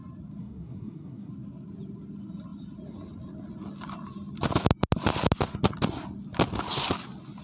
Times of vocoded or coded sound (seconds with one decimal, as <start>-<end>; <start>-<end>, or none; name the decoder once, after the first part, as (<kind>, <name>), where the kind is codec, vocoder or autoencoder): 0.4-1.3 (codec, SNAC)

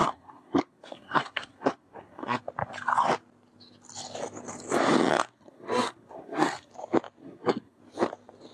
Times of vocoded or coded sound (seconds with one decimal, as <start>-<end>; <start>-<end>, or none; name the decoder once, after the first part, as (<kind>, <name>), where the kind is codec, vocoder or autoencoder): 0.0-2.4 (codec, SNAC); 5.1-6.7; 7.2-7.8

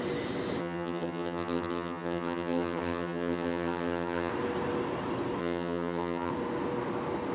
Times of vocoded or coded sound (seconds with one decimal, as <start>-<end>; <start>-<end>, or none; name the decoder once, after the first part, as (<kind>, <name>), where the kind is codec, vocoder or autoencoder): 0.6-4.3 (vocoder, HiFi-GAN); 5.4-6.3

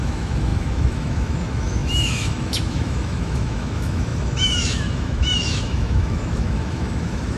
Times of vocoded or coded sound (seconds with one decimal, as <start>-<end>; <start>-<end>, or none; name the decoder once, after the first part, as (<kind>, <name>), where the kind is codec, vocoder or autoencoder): 0.0-7.4 (autoencoder, DAC-VAE)

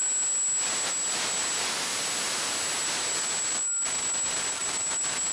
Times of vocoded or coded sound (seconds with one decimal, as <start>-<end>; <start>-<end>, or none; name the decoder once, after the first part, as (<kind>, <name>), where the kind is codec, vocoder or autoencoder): none

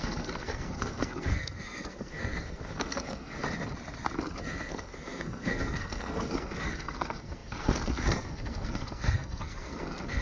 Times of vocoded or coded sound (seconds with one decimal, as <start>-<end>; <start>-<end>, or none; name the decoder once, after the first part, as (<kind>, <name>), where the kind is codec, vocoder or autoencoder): 0.0-3.4 (codec, SNAC); 4.4-10.2

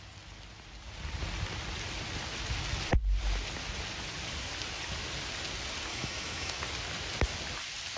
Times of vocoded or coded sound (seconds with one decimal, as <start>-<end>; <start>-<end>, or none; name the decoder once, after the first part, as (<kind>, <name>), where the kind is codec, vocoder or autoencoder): 5.9-6.6 (autoencoder, DAC-VAE)